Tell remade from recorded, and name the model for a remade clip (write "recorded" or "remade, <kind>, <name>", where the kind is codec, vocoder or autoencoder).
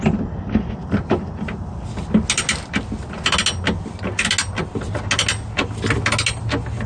recorded